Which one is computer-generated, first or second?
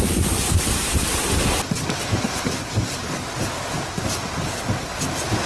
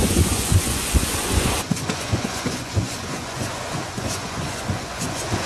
second